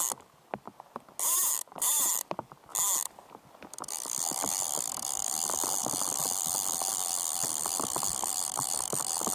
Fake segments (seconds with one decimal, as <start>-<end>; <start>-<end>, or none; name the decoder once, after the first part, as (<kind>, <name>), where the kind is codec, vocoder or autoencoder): none